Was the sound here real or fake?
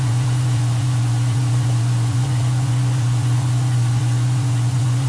fake